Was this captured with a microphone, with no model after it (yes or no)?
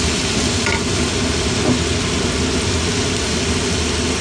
yes